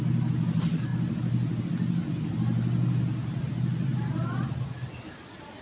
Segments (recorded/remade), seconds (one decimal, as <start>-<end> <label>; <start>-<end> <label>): 0.0-5.6 recorded

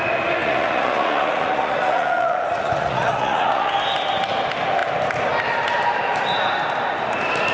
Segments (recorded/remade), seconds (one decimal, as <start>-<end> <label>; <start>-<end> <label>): 0.0-0.4 recorded; 0.4-3.7 remade; 3.7-7.5 recorded